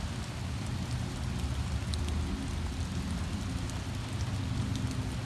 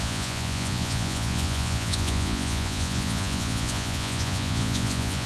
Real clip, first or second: first